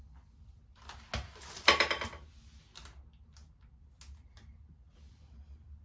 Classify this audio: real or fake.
real